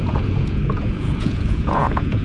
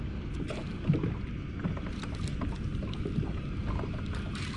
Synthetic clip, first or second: first